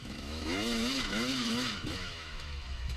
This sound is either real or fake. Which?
fake